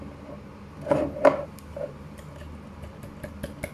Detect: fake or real real